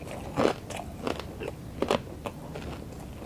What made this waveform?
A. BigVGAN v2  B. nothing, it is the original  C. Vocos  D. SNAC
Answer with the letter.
B